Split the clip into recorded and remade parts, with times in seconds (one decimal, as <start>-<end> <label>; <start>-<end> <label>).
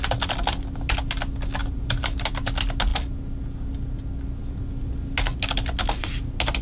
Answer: 0.0-1.6 recorded; 1.6-2.3 remade; 2.3-6.6 recorded